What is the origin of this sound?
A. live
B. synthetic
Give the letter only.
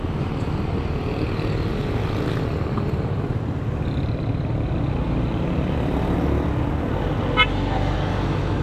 A